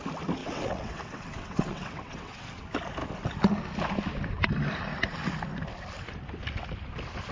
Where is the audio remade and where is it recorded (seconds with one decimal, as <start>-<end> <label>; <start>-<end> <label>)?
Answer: 0.0-0.4 recorded; 0.4-2.6 remade; 2.6-7.3 recorded

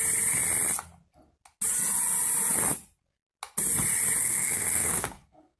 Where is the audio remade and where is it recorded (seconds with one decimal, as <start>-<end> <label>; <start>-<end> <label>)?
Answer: 0.0-4.2 recorded; 4.2-5.6 remade

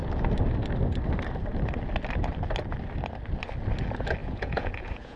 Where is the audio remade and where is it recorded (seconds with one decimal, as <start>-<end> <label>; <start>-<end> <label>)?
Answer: 0.0-4.2 recorded; 4.2-5.2 remade

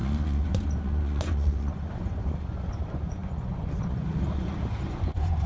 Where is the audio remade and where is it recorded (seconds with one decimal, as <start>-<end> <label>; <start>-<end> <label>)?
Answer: 0.0-5.5 remade

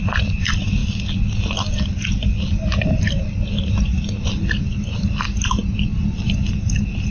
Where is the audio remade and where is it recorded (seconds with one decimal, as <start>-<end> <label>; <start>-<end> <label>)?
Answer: 0.0-7.1 recorded